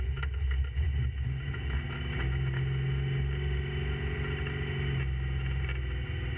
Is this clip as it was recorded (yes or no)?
yes